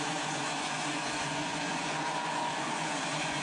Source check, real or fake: fake